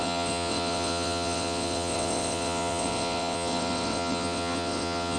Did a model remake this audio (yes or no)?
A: yes